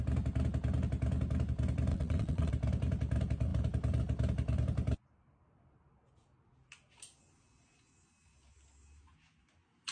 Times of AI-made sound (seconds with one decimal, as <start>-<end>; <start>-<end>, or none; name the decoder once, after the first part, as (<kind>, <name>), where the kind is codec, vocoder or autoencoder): 1.9-2.5 (vocoder, WaveNeXt)